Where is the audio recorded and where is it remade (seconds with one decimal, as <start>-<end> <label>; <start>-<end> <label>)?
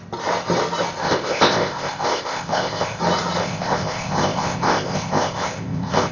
0.0-1.0 recorded; 1.0-3.0 remade; 3.0-3.4 recorded; 3.4-6.1 remade